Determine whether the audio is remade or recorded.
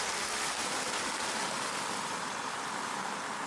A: recorded